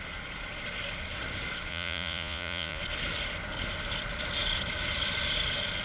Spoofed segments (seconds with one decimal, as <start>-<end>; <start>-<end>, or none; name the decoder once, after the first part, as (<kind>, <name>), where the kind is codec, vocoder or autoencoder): 1.7-2.8 (vocoder, Vocos)